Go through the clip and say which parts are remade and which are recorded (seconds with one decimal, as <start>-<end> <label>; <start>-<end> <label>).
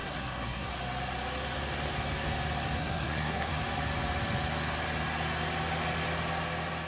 0.0-0.7 remade; 0.7-2.8 recorded; 2.8-3.5 remade; 3.5-6.9 recorded